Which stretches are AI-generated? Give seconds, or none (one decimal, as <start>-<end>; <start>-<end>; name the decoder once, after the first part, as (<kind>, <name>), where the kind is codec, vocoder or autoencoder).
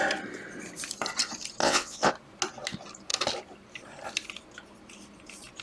1.6-2.1 (vocoder, WaveNeXt)